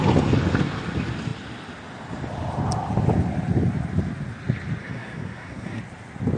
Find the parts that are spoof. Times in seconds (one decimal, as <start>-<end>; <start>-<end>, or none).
4.8-5.8